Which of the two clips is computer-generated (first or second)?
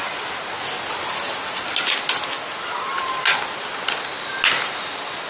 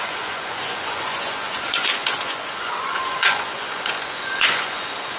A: second